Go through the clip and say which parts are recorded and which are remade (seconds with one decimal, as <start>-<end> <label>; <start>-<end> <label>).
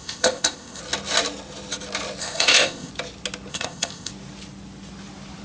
0.0-0.8 remade; 0.8-2.2 recorded; 2.2-2.9 remade; 2.9-3.5 recorded; 3.5-4.1 remade; 4.1-5.4 recorded